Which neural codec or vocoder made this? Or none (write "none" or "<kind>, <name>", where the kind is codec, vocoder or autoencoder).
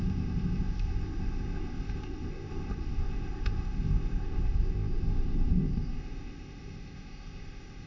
codec, ZipCodec